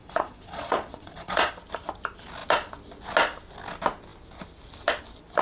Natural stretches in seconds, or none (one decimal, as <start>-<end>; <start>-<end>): 1.5-5.4